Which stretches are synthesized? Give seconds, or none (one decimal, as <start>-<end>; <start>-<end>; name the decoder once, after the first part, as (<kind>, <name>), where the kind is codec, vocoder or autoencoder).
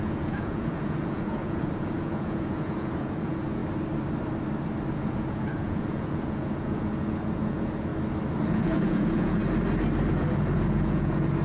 0.0-3.6 (vocoder, Vocos); 4.9-7.9; 8.5-9.4; 10.1-11.4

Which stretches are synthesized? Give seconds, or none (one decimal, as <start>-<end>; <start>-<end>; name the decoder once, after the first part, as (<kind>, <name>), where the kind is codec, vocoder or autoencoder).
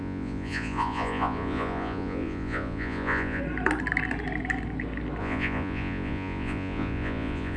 0.0-3.4 (vocoder, Vocos); 5.2-7.6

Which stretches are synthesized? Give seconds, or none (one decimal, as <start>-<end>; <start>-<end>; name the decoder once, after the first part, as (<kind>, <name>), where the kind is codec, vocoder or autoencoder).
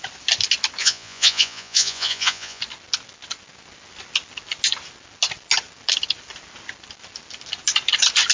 0.8-2.6 (vocoder, Vocos)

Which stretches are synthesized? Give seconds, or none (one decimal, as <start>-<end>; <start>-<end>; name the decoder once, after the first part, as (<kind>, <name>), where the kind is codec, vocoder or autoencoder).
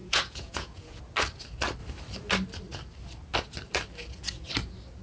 0.0-1.0 (vocoder, Vocos)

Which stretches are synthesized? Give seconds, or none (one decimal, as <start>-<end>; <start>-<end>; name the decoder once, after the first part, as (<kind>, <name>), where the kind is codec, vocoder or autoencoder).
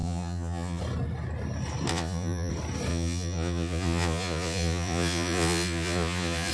0.0-0.8 (vocoder, Vocos); 1.9-2.5; 2.9-6.5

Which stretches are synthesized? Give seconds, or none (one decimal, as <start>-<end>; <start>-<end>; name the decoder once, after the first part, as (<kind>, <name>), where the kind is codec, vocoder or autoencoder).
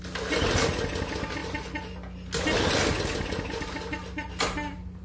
none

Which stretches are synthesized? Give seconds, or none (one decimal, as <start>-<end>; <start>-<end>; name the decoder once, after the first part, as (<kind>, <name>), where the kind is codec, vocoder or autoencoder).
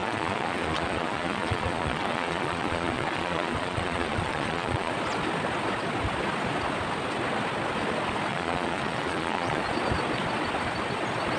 0.0-4.9 (vocoder, Vocos); 8.3-9.6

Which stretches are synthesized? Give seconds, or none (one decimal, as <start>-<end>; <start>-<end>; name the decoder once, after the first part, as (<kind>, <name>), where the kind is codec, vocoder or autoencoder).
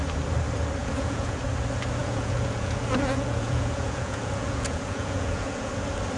0.8-1.4 (vocoder, Vocos); 2.0-5.7